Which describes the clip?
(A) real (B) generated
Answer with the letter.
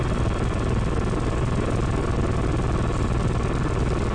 A